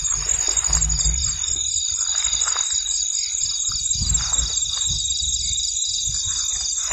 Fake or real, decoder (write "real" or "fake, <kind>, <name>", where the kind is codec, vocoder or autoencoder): real